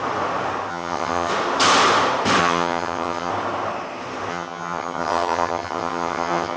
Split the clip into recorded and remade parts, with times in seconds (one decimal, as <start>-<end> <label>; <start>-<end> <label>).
0.0-0.7 recorded; 0.7-1.3 remade; 1.3-2.4 recorded; 2.4-3.3 remade; 3.3-4.3 recorded; 4.3-6.6 remade